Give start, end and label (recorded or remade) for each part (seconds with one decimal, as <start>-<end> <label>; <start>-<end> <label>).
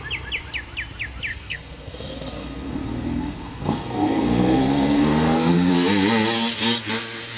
0.0-1.3 recorded; 1.3-5.7 remade; 5.7-7.4 recorded